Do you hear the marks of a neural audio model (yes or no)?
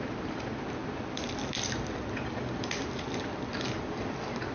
yes